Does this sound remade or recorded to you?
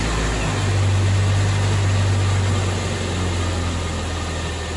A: recorded